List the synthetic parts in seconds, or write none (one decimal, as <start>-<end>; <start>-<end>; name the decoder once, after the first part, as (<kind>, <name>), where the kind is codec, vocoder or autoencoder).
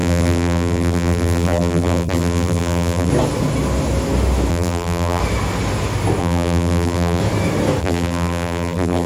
0.0-3.1 (vocoder, BigVGAN v2); 4.5-5.2; 6.2-7.2; 7.8-9.1